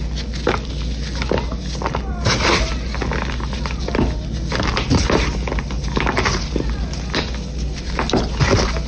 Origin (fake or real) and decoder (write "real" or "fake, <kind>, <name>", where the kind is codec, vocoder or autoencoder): real